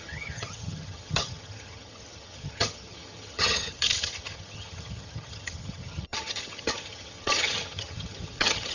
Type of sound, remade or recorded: remade